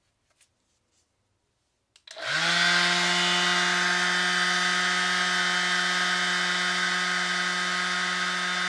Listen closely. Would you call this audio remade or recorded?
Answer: recorded